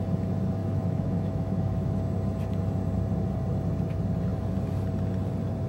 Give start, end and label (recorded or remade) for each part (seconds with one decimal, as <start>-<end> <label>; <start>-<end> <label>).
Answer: 0.0-0.6 recorded; 0.6-2.0 remade; 2.0-5.7 recorded